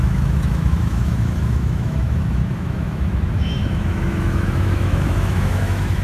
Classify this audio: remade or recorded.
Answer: remade